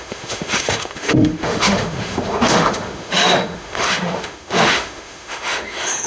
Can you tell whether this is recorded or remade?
remade